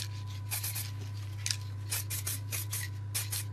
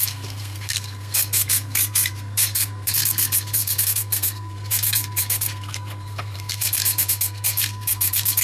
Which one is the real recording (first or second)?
first